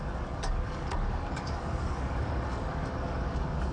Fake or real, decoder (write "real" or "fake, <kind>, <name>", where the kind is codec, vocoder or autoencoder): fake, codec, DAC